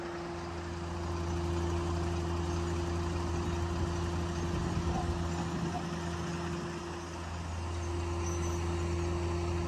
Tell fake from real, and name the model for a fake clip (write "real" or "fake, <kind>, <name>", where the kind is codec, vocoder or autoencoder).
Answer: real